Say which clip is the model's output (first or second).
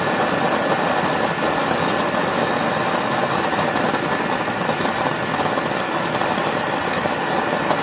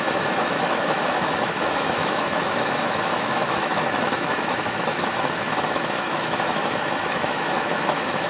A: second